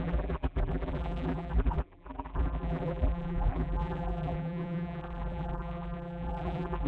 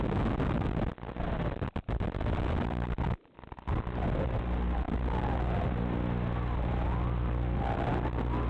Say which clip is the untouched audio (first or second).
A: second